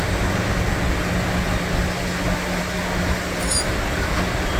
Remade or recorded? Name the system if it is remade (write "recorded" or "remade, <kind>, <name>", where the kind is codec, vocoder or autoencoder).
recorded